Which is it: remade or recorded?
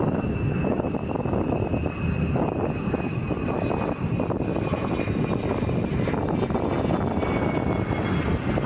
recorded